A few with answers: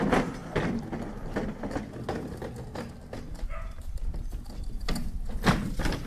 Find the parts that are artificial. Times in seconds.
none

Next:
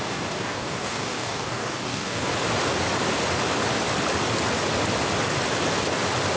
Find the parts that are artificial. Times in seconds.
0.0-2.3 (codec, DAC)

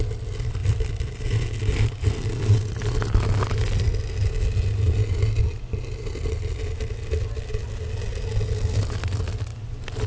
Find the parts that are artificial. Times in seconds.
none

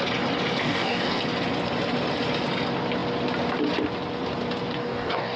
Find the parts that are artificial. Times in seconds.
0.6-1.2 (codec, DAC); 4.8-5.4

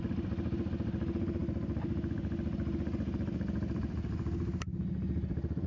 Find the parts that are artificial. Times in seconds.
none